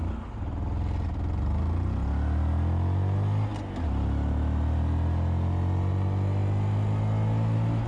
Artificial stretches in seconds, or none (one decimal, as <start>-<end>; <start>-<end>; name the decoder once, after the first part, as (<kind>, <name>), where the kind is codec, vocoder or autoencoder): none